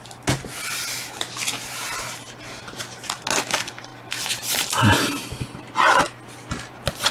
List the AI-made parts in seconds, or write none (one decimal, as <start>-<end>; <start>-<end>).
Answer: none